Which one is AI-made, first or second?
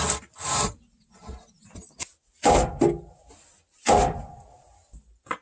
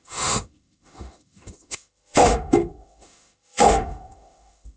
second